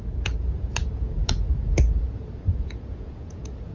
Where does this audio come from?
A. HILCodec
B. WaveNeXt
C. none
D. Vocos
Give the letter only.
D